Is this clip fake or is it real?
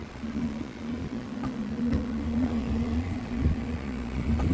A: fake